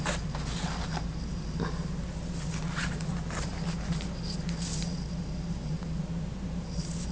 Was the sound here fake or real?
real